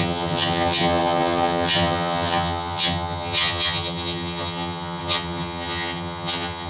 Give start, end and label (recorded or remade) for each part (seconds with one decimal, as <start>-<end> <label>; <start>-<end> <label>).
0.0-6.7 remade